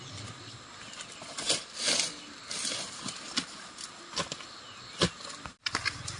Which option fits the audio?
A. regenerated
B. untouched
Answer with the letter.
B